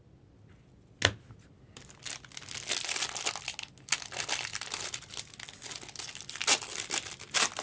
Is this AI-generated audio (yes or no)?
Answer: no